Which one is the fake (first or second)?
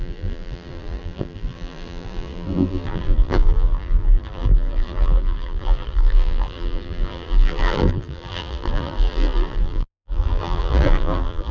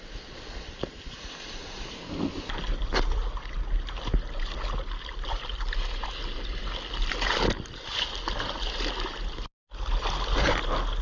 first